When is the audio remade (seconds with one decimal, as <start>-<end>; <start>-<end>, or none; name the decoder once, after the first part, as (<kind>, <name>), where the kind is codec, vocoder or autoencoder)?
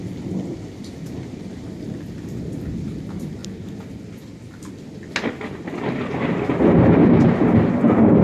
none